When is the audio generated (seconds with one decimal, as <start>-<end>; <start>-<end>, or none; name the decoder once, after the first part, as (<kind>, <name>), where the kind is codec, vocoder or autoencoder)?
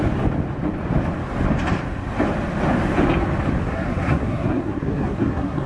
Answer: 3.6-5.7 (codec, SNAC)